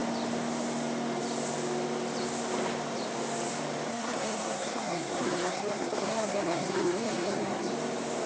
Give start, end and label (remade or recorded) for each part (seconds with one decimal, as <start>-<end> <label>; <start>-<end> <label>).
0.0-3.9 recorded; 3.9-7.7 remade; 7.7-8.3 recorded